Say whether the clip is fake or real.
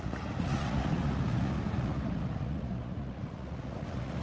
fake